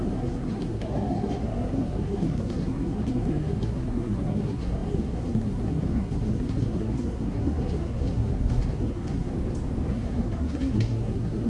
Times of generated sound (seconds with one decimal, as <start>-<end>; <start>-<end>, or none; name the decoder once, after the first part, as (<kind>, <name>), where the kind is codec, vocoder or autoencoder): 0.0-9.3 (codec, SNAC); 9.9-11.5